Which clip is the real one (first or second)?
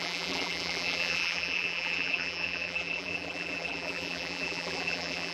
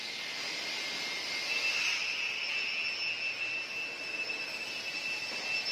second